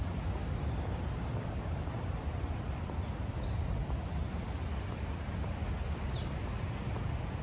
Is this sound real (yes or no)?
yes